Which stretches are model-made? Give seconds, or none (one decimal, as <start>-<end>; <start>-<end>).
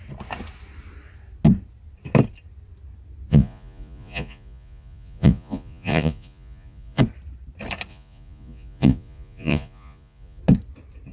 3.3-7.0; 7.9-10.4